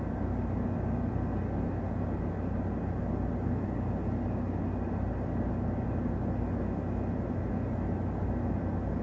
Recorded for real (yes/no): yes